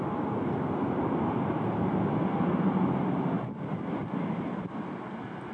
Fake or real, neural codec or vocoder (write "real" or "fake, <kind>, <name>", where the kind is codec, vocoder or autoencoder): real